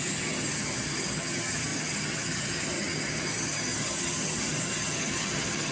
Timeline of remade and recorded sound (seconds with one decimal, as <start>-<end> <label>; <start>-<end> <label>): 0.0-5.7 remade